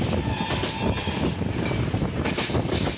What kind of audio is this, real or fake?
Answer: real